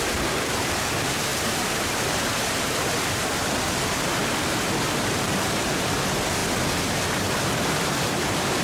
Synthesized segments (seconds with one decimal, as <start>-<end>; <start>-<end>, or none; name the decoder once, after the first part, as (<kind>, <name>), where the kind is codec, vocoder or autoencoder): 0.0-4.2 (vocoder, BigVGAN v2); 4.8-6.4; 7.7-8.6